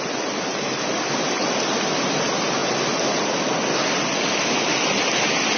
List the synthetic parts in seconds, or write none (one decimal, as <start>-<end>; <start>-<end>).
none